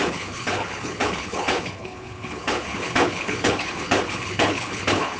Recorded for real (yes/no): no